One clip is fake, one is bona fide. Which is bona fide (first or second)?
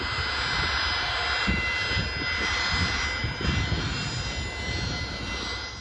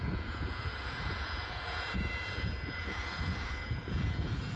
first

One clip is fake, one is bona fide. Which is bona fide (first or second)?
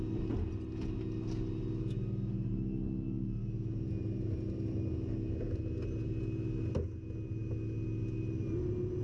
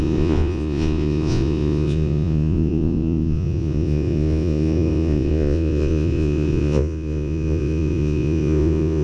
first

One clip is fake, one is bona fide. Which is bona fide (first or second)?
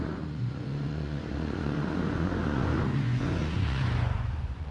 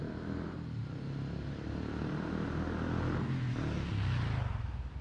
second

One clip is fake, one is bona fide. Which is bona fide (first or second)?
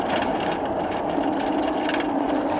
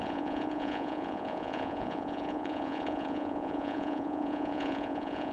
first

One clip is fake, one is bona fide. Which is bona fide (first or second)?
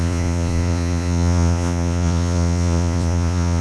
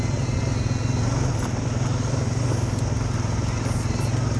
second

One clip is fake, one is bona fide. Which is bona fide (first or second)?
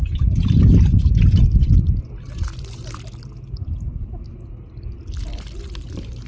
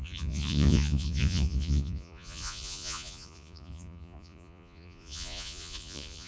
first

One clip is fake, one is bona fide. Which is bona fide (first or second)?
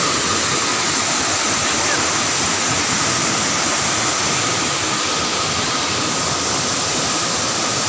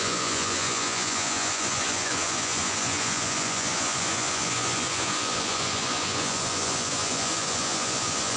first